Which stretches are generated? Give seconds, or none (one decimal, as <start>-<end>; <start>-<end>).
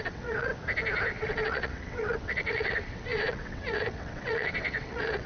0.0-0.5; 1.1-5.3